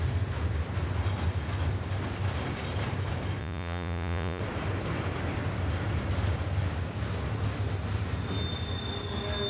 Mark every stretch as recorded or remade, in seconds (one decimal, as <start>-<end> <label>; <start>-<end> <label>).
0.0-3.4 recorded; 3.4-4.4 remade; 4.4-9.5 recorded

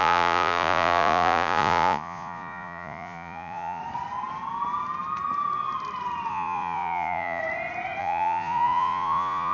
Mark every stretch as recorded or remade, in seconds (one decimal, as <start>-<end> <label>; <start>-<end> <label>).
0.0-3.8 remade; 3.8-6.3 recorded; 6.3-7.4 remade; 7.4-8.0 recorded; 8.0-9.5 remade